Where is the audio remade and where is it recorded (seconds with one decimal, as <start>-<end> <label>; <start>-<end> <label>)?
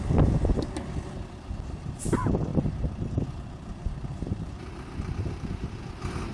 0.0-2.5 recorded; 2.5-5.8 remade; 5.8-6.3 recorded